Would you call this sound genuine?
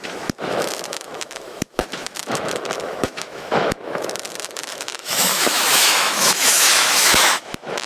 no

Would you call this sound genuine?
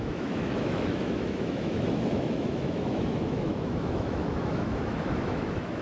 no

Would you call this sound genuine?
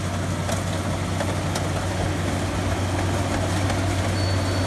yes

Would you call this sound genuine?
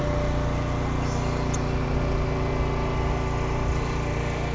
yes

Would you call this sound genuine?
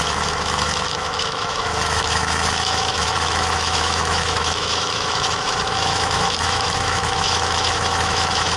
no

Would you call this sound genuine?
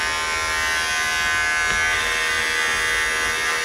yes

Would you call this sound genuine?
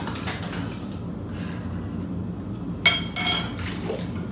yes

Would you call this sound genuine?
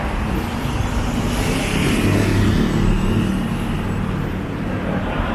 yes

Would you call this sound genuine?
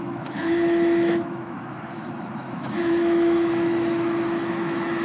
no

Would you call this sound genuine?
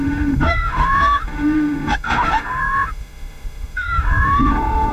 no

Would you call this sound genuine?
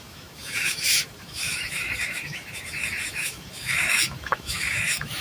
no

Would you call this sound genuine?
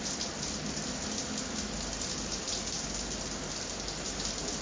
yes